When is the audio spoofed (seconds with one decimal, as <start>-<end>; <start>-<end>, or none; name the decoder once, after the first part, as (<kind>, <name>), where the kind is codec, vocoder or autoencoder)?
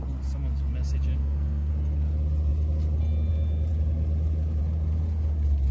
1.2-1.7 (codec, SNAC)